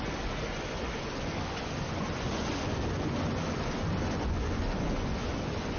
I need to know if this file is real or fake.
fake